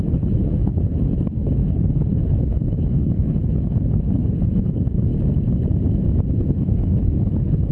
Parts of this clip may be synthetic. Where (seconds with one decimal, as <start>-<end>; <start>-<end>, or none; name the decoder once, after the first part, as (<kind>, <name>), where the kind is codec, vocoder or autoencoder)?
0.0-5.1 (codec, HILCodec); 6.3-7.7